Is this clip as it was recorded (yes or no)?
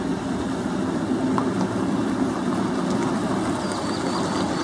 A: yes